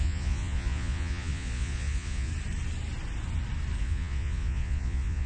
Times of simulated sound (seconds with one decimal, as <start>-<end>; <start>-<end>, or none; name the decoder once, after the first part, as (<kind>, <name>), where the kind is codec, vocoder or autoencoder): 0.0-2.3 (vocoder, Vocos); 3.8-5.3